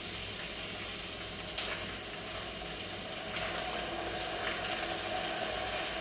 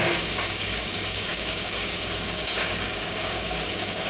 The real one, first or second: first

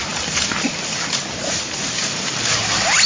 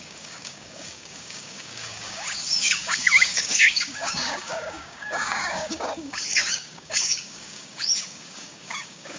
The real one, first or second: first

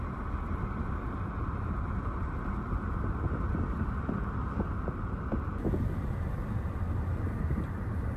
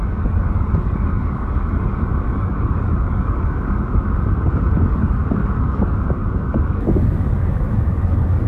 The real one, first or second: first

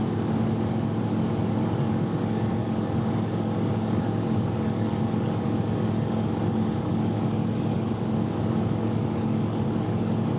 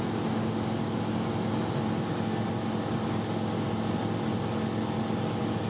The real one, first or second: second